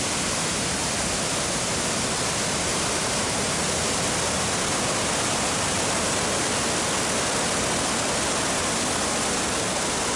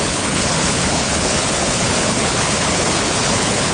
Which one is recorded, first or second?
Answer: first